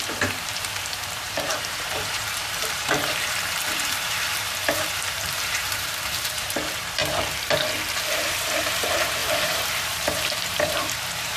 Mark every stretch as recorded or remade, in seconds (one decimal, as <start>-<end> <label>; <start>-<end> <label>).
0.0-7.0 remade; 7.0-8.0 recorded; 8.0-11.4 remade